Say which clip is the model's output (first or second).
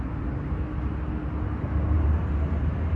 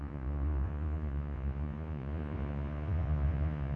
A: second